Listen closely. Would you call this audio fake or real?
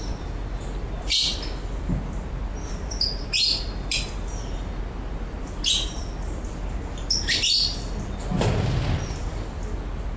real